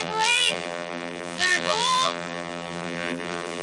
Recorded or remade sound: remade